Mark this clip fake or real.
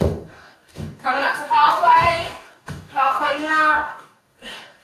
fake